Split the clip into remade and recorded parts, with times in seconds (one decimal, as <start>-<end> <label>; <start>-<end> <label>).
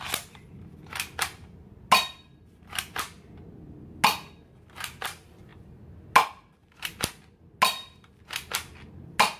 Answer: 0.0-9.4 recorded